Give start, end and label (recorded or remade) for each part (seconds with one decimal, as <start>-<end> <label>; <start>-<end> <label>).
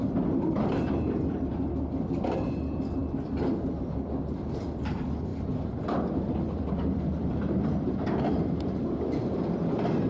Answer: 0.0-3.0 remade; 3.0-3.7 recorded; 3.7-10.1 remade